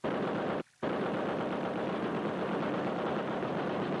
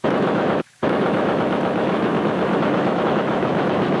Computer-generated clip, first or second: second